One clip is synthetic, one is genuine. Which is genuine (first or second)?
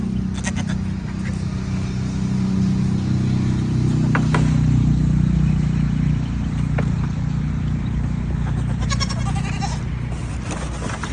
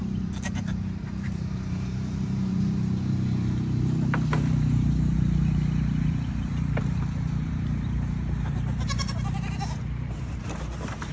first